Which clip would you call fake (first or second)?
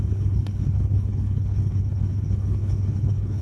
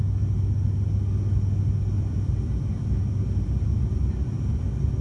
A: first